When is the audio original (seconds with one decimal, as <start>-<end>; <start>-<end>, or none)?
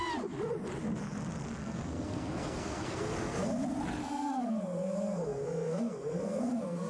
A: 0.0-1.6; 3.5-4.0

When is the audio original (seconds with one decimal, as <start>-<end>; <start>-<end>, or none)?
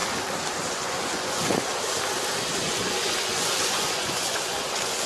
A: 0.0-0.7; 1.7-2.6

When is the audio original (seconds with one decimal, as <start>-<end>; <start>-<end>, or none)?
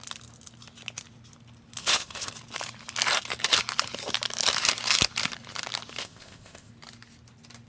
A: 0.0-1.8; 2.3-6.0; 6.7-7.7